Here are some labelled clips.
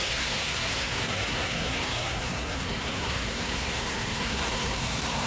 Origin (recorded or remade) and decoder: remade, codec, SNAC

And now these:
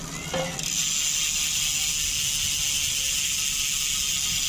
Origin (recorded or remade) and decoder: recorded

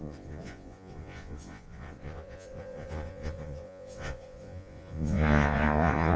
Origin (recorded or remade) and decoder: remade, vocoder, Vocos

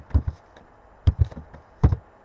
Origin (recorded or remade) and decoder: recorded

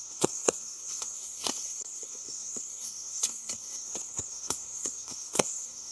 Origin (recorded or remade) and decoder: remade, codec, SNAC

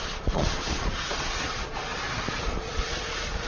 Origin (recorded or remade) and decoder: remade, vocoder, Vocos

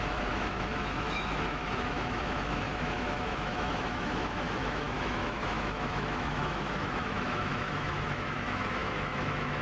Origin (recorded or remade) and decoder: remade, autoencoder, DAC-VAE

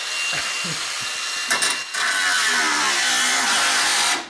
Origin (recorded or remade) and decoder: recorded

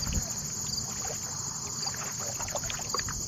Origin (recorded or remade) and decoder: recorded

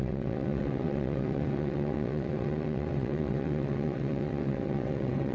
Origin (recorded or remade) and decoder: remade, vocoder, WaveNeXt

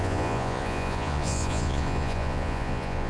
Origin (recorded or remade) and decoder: remade, vocoder, Vocos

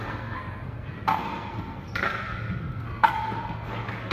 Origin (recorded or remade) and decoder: remade, codec, SNAC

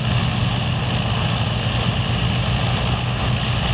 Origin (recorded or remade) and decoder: recorded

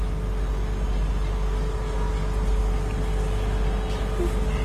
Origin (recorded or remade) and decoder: recorded